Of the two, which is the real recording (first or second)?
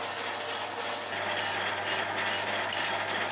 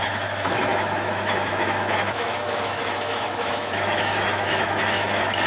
first